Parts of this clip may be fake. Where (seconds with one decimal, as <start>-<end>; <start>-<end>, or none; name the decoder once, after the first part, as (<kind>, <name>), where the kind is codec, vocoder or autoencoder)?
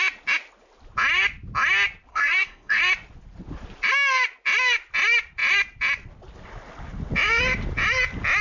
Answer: 2.1-2.8 (codec, SNAC)